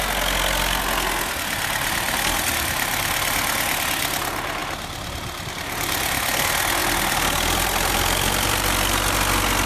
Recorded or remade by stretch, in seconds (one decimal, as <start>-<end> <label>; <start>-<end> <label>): 0.0-4.6 recorded; 4.6-5.5 remade; 5.5-6.8 recorded; 6.8-9.0 remade; 9.0-9.7 recorded